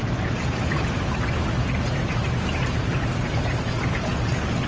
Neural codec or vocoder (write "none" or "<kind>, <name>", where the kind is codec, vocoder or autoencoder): none